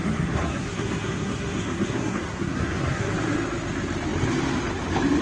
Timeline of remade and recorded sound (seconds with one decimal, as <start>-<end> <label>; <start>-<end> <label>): 0.0-3.1 remade; 3.1-5.2 recorded